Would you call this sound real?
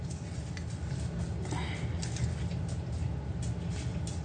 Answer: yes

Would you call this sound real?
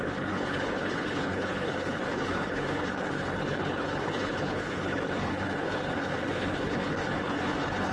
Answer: no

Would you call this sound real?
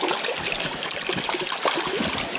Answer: yes